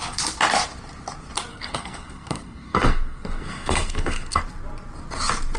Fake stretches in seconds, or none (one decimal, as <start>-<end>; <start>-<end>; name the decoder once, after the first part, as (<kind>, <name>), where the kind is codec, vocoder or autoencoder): 1.5-4.4 (codec, SNAC)